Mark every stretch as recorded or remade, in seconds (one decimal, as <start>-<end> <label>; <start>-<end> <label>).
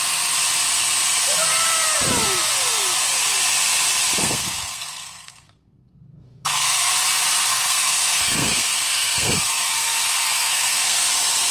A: 0.0-4.2 recorded; 4.2-6.9 remade; 6.9-7.5 recorded; 7.5-11.1 remade; 11.1-11.5 recorded